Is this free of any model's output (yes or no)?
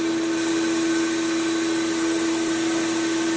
yes